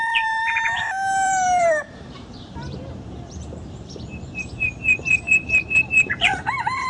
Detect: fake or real fake